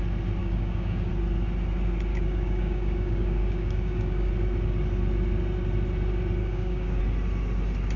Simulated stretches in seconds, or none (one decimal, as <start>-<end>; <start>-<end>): 0.4-1.1; 2.1-4.3; 6.4-7.0

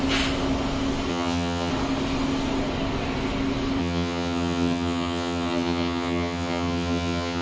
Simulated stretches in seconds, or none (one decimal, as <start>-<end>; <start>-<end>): 1.1-1.7; 3.8-7.4

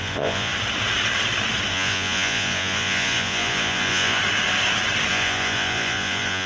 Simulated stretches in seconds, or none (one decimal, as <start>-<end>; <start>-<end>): 0.0-0.5; 1.7-4.2; 5.1-6.5

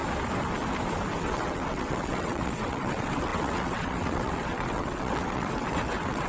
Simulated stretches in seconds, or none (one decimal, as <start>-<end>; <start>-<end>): 1.2-6.3

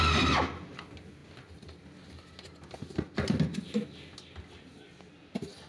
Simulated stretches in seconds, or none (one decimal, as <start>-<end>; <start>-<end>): none

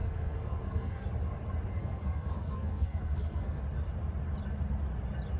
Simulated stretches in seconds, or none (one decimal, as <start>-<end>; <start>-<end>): 0.0-1.1; 1.8-3.6